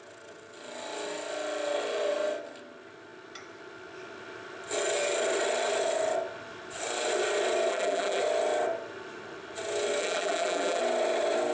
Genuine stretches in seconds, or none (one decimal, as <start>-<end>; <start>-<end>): 0.0-7.7; 8.2-10.0; 10.8-11.5